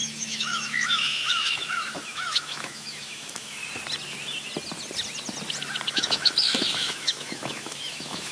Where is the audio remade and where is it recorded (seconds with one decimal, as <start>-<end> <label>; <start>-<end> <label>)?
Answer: 0.0-3.6 remade; 3.6-5.9 recorded; 5.9-8.3 remade